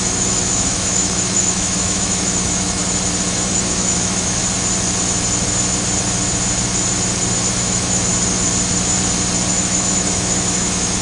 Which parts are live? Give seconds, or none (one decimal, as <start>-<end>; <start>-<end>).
2.8-3.3; 4.4-7.5; 8.1-9.5